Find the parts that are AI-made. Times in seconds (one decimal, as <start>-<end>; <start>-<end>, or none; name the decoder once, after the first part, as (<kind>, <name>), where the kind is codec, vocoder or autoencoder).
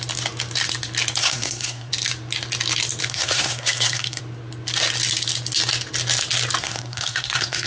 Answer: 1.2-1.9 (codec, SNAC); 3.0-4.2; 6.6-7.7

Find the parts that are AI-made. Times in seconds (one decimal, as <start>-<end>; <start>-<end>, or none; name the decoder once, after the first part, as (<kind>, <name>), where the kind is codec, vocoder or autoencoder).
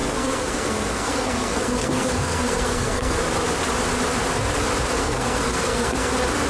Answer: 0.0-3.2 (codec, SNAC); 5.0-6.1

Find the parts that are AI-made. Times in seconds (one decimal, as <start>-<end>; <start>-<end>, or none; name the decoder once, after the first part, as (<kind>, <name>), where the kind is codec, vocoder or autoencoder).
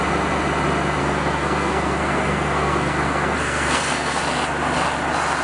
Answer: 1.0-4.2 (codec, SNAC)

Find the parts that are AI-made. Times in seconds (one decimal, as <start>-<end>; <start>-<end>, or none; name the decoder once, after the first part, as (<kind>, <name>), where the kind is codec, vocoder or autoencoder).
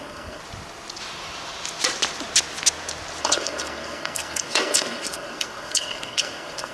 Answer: 0.0-0.4 (codec, SNAC); 3.2-6.7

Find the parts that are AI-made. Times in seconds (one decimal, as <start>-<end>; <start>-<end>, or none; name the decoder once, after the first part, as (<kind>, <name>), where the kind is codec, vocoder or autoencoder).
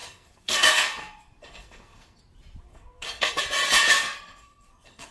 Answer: 0.0-2.2 (codec, SNAC); 2.7-3.4; 4.0-5.1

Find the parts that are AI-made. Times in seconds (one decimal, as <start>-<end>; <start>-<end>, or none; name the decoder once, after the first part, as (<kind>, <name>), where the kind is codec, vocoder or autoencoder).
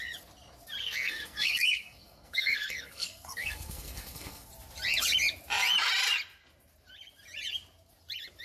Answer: 0.8-4.5 (codec, SNAC)